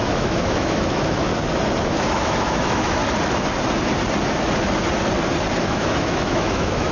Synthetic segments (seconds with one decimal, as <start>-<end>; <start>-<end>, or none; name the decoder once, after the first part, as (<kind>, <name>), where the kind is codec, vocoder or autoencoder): 0.0-1.3 (autoencoder, DAC-VAE); 1.8-3.0; 5.6-6.9